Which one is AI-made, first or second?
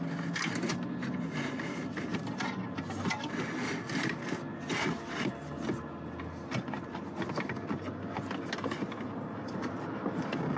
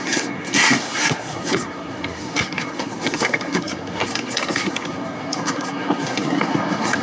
second